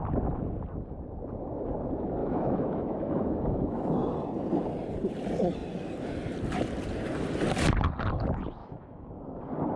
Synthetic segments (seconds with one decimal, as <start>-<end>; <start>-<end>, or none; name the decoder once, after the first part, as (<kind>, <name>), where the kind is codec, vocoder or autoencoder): 2.2-3.9 (autoencoder, DAC-VAE); 8.6-9.1